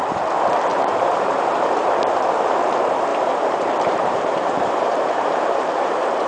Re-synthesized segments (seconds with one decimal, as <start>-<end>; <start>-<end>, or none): 0.7-2.2; 3.1-6.3